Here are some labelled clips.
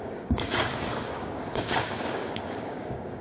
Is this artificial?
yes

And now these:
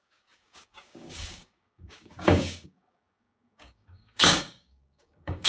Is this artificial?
yes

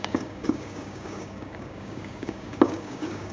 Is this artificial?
yes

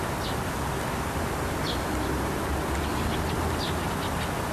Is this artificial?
no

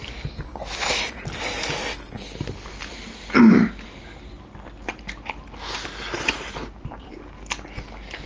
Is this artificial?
no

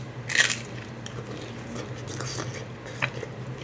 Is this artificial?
no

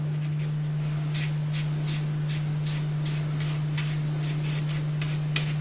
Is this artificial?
no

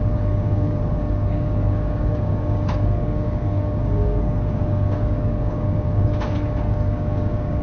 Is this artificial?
yes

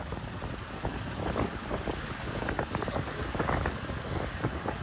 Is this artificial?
yes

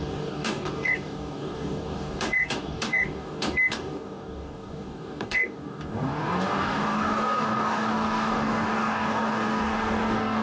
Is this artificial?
yes